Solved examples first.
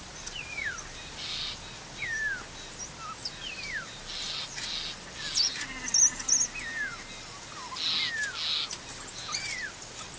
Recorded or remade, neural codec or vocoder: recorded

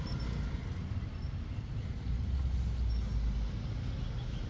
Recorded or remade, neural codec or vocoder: recorded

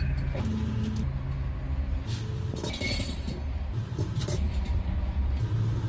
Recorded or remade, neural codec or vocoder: recorded